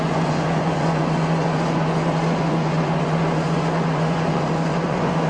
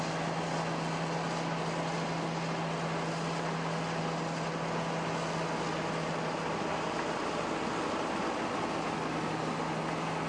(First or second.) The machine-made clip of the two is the first